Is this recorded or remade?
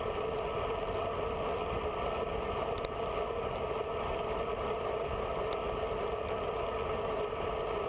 recorded